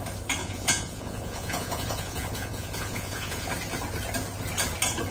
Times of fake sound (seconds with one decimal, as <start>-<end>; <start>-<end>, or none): 0.4-3.5